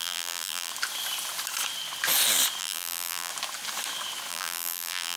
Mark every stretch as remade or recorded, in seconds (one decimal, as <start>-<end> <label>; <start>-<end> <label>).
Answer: 0.0-0.7 remade; 0.7-2.6 recorded; 2.6-3.3 remade; 3.3-4.3 recorded; 4.3-5.2 remade